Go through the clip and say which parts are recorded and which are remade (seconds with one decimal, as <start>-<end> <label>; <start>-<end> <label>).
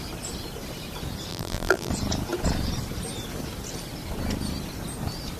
0.0-1.3 recorded; 1.3-1.9 remade; 1.9-5.4 recorded